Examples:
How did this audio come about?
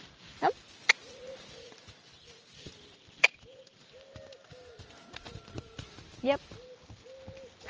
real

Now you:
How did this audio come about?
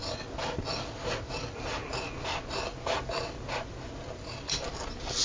real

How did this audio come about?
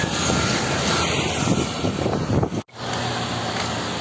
real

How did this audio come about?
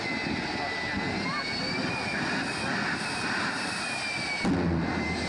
real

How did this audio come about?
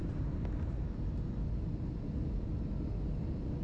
real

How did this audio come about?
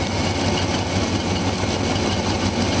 real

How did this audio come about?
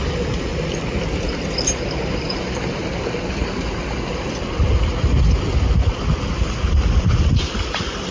real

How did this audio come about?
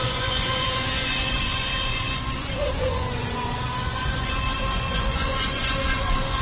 fake